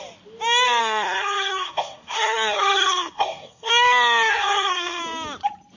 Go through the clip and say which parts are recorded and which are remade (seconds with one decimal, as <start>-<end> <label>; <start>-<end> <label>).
0.0-0.8 recorded; 0.8-3.7 remade; 3.7-4.3 recorded; 4.3-5.0 remade; 5.0-5.8 recorded